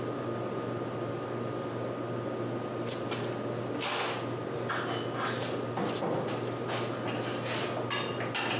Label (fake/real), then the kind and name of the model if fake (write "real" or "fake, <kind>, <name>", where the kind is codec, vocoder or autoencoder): real